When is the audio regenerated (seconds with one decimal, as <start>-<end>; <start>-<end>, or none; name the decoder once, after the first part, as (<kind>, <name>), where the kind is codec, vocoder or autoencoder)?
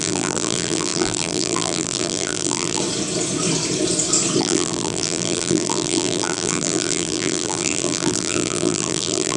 0.0-2.8 (vocoder, BigVGAN v2); 4.4-9.4